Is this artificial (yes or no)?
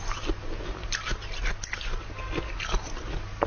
no